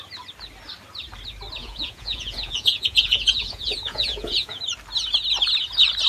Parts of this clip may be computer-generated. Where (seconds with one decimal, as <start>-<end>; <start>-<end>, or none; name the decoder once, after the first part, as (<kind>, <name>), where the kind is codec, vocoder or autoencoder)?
1.6-4.6 (vocoder, Vocos)